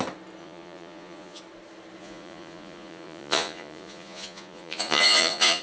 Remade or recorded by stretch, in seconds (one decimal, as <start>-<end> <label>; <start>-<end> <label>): 0.0-0.4 recorded; 0.4-1.4 remade; 1.4-2.0 recorded; 2.0-5.6 remade